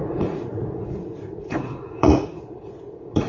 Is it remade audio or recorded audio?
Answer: remade